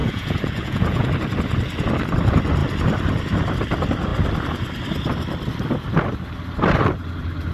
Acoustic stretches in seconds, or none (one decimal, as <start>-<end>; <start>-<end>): 1.1-7.5